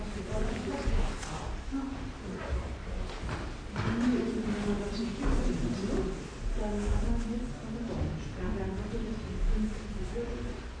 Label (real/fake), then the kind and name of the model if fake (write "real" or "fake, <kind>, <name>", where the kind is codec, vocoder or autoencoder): real